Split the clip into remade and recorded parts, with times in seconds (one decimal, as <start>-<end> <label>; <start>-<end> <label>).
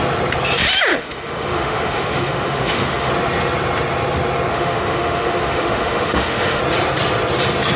0.0-0.9 recorded; 0.9-3.1 remade; 3.1-4.5 recorded; 4.5-6.6 remade; 6.6-7.8 recorded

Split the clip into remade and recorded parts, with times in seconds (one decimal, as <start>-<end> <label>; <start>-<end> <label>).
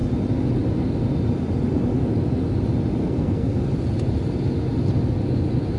0.0-3.0 recorded; 3.0-3.7 remade; 3.7-5.8 recorded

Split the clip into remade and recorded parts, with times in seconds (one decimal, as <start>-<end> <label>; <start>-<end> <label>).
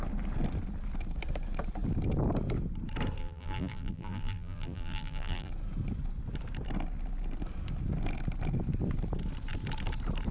0.0-3.2 recorded; 3.2-5.5 remade; 5.5-10.3 recorded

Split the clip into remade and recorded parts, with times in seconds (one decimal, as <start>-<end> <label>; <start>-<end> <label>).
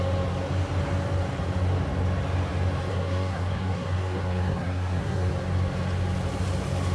0.0-2.9 recorded; 2.9-5.3 remade; 5.3-6.9 recorded